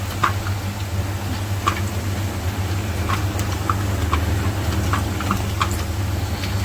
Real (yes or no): yes